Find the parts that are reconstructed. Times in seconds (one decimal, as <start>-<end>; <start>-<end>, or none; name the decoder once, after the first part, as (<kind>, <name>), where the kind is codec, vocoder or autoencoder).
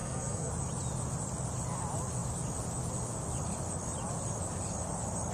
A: 0.0-0.5 (codec, SNAC)